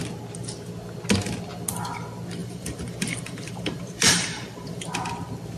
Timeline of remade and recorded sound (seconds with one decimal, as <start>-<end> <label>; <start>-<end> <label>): 0.0-2.4 recorded; 2.4-4.9 remade; 4.9-5.6 recorded